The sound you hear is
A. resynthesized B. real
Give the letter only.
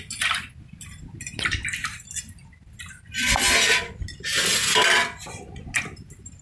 B